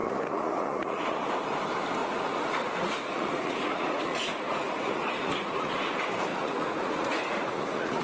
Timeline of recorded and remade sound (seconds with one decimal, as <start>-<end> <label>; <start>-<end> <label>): 0.0-1.3 remade; 1.3-2.0 recorded; 2.0-5.7 remade; 5.7-6.3 recorded; 6.3-8.0 remade